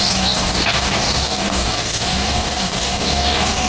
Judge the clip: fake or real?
fake